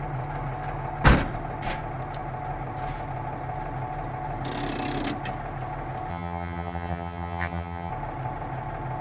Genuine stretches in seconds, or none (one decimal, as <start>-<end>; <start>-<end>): 0.0-6.1; 7.9-9.0